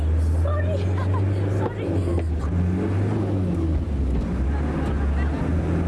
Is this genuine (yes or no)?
yes